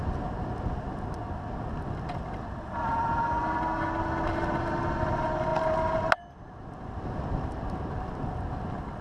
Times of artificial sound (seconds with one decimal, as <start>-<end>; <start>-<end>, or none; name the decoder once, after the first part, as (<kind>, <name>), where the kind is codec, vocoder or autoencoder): none